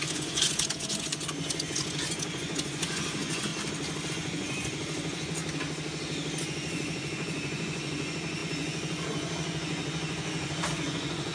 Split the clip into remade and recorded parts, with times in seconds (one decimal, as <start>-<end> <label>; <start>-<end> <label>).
0.0-3.5 remade; 3.5-4.1 recorded; 4.1-5.4 remade; 5.4-6.4 recorded; 6.4-11.3 remade